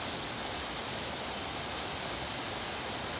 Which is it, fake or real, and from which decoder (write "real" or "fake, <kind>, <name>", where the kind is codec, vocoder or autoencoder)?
real